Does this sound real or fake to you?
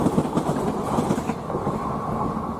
real